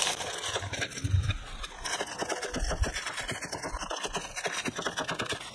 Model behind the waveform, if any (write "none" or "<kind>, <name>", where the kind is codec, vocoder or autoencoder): none